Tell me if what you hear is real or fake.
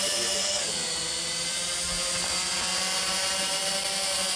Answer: real